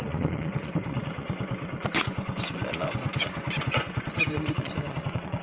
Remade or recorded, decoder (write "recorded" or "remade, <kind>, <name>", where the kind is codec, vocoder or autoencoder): remade, vocoder, Vocos